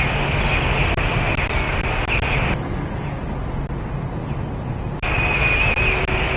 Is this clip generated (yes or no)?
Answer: no